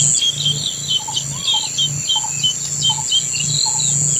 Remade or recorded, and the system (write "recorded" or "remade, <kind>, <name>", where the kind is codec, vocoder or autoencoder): recorded